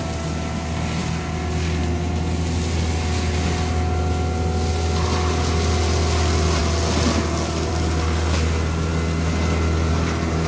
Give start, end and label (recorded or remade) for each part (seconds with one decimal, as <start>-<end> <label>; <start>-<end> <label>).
0.0-10.5 recorded